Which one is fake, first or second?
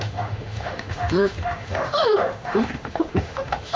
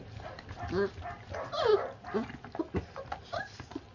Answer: first